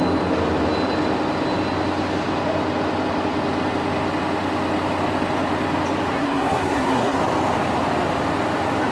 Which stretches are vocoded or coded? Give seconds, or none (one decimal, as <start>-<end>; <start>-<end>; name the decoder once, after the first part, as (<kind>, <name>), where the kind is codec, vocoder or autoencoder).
6.1-7.2 (codec, SNAC)